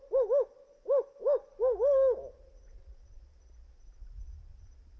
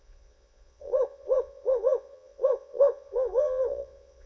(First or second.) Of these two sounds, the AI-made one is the second